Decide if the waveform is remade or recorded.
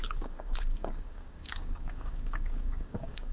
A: remade